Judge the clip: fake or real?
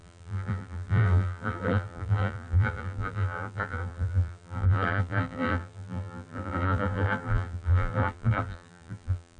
fake